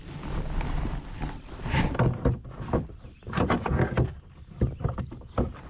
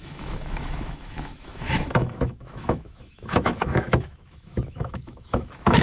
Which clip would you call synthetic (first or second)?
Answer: second